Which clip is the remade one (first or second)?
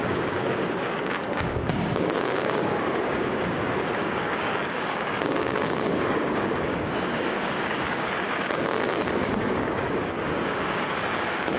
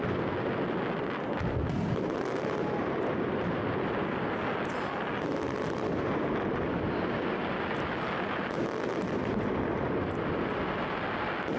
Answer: first